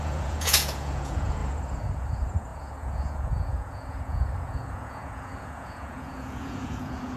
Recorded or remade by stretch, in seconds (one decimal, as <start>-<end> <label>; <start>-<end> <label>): 0.0-7.2 remade